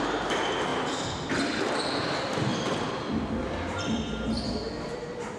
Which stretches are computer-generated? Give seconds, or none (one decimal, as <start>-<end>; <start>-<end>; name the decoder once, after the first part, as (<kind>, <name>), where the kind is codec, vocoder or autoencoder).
none

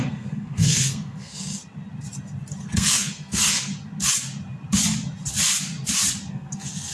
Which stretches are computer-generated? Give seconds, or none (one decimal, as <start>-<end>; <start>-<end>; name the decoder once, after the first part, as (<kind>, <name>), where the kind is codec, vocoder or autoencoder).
0.0-1.6 (codec, SNAC); 2.6-3.7; 6.3-6.9

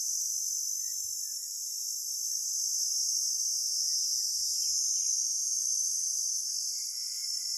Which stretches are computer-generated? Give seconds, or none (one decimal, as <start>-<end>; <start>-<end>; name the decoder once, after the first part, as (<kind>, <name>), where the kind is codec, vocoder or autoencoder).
none

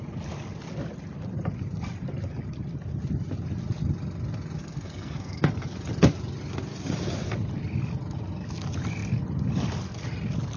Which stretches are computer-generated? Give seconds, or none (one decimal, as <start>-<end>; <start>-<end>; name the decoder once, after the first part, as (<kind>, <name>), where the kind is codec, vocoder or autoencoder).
4.6-5.5 (codec, SNAC)

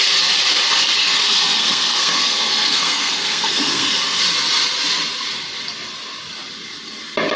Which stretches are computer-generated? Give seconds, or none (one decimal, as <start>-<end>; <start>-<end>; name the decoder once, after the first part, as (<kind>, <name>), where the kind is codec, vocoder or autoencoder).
1.0-4.2 (codec, SNAC)

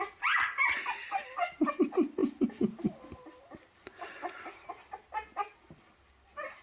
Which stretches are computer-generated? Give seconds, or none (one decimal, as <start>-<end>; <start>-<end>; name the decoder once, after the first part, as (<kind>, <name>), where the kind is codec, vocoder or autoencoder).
none